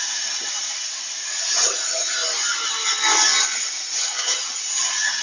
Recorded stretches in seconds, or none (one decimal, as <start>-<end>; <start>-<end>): 2.2-3.4